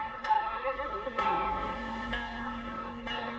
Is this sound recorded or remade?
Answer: remade